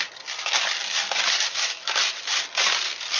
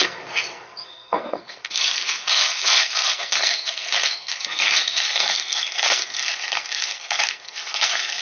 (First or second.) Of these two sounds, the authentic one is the first